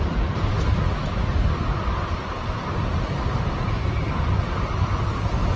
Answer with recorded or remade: recorded